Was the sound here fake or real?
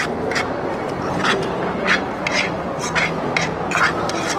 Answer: real